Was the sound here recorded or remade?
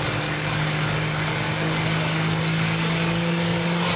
remade